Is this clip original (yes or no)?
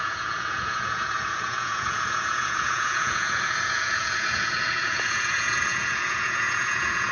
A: no